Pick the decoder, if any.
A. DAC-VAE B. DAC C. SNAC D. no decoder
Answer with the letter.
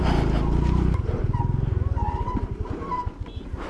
D